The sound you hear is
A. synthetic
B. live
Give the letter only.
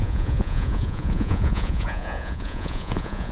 A